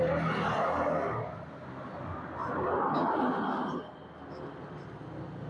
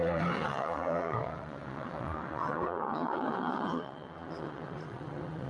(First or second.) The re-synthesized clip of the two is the second